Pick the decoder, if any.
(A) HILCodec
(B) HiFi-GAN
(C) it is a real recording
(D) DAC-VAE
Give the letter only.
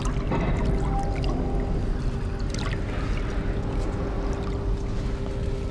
C